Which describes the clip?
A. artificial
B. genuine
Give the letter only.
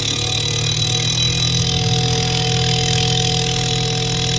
B